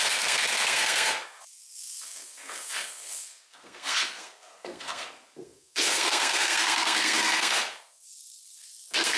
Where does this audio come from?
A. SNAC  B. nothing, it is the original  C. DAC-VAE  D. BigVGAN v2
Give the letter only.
A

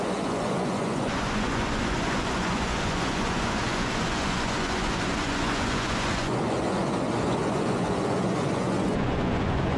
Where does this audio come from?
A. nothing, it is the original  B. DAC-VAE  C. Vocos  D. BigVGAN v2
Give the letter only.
C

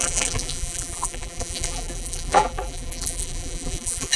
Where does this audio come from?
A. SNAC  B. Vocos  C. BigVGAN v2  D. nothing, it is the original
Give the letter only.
C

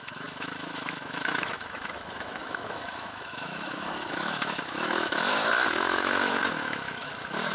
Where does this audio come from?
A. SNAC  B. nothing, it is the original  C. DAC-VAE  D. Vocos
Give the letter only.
C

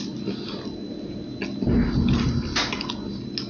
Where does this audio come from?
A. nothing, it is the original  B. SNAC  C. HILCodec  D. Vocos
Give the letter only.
A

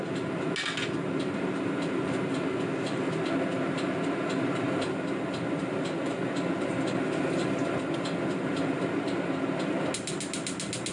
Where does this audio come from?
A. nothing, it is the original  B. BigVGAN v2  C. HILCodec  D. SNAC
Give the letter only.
A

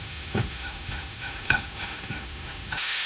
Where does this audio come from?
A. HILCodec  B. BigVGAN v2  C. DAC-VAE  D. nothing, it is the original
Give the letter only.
C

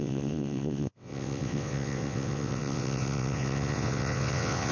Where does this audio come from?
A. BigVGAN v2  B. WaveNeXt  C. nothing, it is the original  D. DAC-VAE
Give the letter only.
B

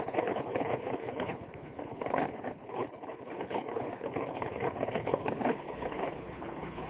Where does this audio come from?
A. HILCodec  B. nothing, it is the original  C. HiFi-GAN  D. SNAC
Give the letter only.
A